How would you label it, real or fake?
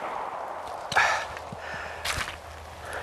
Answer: real